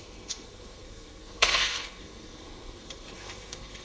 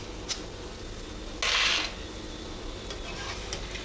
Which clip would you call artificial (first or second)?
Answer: first